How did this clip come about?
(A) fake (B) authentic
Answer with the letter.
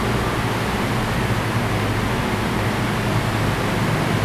B